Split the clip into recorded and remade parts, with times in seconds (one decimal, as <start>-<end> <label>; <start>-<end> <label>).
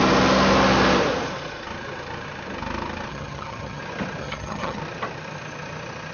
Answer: 0.0-3.1 recorded; 3.1-3.8 remade; 3.8-4.2 recorded; 4.2-4.8 remade; 4.8-6.1 recorded